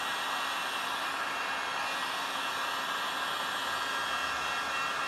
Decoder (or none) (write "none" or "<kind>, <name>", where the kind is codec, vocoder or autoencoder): none